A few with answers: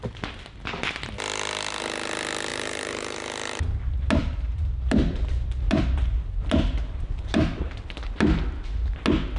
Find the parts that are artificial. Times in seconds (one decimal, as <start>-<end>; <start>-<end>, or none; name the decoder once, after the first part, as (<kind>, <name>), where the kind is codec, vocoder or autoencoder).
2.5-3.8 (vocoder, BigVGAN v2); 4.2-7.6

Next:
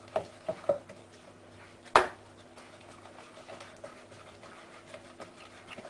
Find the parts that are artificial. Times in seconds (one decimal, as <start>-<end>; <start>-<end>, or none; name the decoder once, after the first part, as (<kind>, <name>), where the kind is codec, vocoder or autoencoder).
0.0-1.0 (vocoder, BigVGAN v2); 4.0-5.9

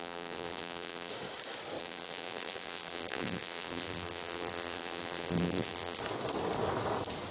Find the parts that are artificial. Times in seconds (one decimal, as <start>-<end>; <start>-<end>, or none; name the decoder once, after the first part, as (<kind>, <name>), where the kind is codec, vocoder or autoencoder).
0.0-1.1 (vocoder, BigVGAN v2); 1.8-6.0